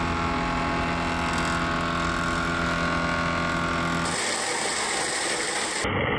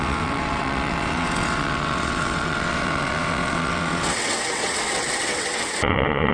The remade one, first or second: second